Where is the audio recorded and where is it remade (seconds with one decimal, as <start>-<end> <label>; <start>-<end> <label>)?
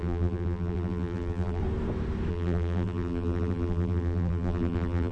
0.0-1.6 remade; 1.6-2.3 recorded; 2.3-5.1 remade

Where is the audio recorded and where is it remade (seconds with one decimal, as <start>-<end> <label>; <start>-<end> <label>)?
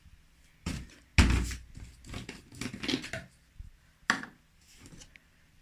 0.0-1.1 remade; 1.1-4.5 recorded; 4.5-5.6 remade